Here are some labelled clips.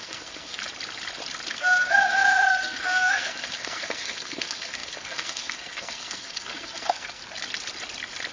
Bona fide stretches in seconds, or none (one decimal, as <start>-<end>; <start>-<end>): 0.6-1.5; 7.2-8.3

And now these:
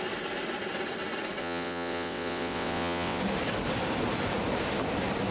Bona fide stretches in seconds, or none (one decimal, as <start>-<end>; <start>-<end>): 0.0-1.4; 3.2-5.3

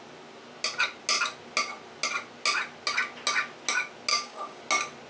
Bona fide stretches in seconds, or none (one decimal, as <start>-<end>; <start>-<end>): 0.0-4.1; 4.6-5.1

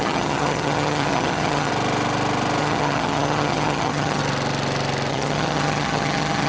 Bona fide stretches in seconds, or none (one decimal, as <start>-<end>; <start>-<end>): 1.7-2.6; 4.2-5.1

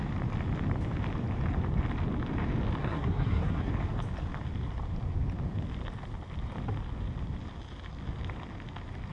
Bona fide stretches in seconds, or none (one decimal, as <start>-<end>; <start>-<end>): 0.0-2.8; 3.7-9.1

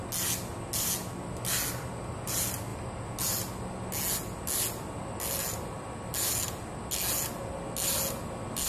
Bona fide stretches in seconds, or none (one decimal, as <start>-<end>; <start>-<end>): 0.0-8.7

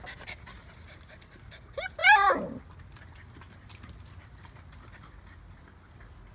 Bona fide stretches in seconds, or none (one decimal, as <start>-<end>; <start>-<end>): 0.0-6.3

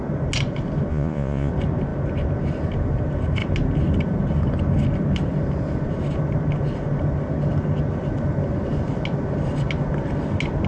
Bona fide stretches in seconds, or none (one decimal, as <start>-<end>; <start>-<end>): 0.0-0.9; 1.5-10.7